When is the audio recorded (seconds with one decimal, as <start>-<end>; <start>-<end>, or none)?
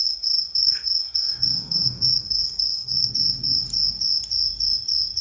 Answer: 3.1-5.2